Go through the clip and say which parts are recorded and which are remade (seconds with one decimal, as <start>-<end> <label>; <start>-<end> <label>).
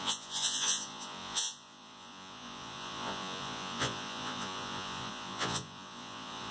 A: 0.0-6.5 remade